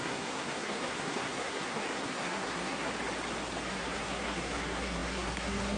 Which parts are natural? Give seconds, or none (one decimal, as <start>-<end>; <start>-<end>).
2.9-3.7